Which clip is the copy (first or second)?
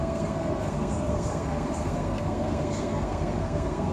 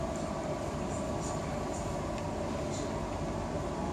first